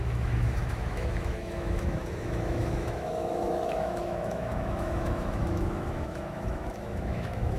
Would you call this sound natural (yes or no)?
no